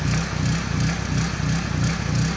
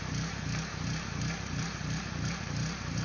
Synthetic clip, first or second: second